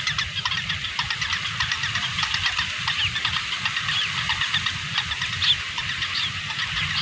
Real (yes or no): yes